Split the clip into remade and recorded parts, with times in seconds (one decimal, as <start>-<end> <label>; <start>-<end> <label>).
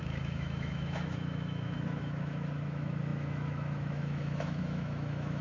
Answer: 0.0-5.4 remade